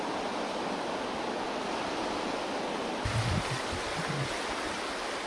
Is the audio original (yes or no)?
yes